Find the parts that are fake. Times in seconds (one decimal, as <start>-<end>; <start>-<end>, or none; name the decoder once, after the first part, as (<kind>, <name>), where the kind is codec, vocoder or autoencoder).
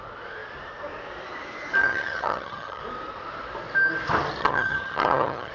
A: 1.8-2.8 (vocoder, HiFi-GAN); 4.4-5.5